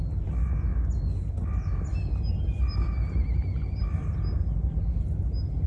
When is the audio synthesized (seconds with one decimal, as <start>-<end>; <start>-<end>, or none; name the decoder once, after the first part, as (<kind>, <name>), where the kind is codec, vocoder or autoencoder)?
none